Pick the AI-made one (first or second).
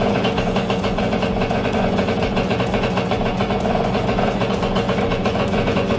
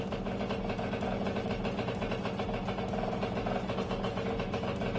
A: first